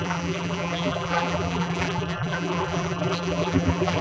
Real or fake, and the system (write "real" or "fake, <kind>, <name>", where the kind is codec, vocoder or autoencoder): fake, vocoder, BigVGAN v2